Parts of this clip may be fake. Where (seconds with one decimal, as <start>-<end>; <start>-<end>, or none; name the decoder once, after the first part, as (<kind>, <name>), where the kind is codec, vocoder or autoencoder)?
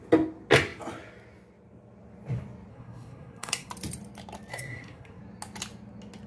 2.7-3.7 (codec, SNAC); 4.5-5.2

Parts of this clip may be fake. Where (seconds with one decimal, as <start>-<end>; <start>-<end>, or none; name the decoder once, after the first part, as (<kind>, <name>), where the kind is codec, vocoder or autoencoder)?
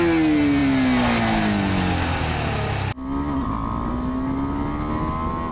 none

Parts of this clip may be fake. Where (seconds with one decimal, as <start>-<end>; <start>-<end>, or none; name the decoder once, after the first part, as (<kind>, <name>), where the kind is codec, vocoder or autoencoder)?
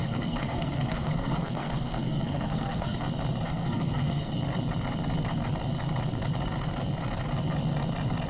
0.0-3.0 (codec, SNAC); 3.5-4.3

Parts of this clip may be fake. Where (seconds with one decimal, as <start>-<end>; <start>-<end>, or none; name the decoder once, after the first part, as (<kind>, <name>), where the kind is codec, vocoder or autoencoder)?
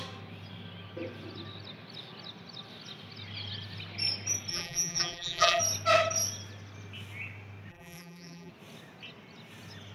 4.5-5.6 (vocoder, BigVGAN v2); 7.7-8.5